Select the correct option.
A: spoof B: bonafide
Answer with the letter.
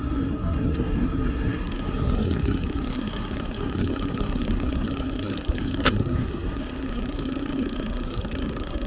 A